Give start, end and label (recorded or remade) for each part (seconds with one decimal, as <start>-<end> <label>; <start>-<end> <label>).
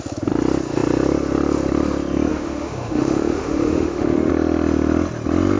0.0-2.3 recorded; 2.3-4.3 remade; 4.3-5.6 recorded